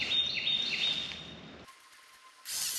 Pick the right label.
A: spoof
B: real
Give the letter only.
B